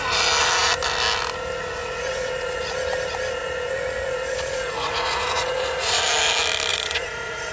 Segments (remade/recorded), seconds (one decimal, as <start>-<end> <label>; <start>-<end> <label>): 0.0-1.8 recorded; 1.8-2.6 remade; 2.6-3.4 recorded; 3.4-5.9 remade; 5.9-6.7 recorded; 6.7-7.5 remade